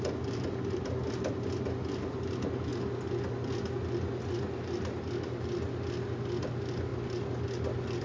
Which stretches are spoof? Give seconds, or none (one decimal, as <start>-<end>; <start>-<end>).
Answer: none